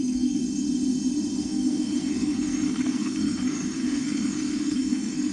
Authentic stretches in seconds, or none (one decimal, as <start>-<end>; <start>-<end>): 0.4-1.4